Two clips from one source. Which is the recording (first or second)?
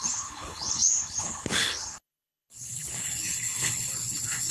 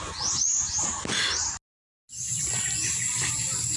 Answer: second